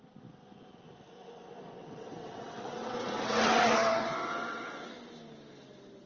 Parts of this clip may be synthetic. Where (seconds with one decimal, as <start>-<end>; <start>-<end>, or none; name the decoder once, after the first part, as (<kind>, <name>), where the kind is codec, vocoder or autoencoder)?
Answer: 1.7-4.9 (vocoder, WaveNeXt)